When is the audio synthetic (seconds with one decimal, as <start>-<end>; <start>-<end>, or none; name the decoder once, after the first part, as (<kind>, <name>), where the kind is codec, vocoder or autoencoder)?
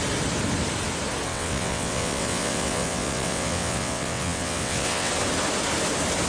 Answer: 1.3-5.1 (vocoder, WaveNeXt)